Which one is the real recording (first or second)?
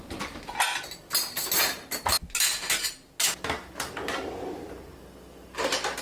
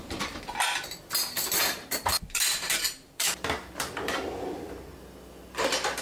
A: first